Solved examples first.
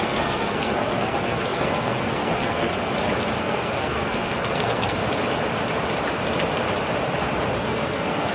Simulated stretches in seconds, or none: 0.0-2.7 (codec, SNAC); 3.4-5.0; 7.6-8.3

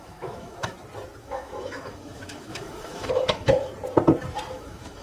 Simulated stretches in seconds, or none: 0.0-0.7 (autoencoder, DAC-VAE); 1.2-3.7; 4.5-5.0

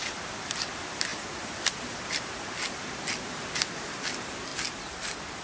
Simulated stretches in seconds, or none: none

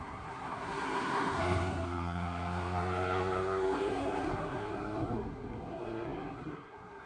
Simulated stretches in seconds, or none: 0.0-7.1 (codec, SNAC)

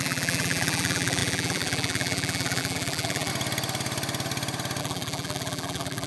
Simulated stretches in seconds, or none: 0.0-3.3 (vocoder, BigVGAN v2); 4.8-6.1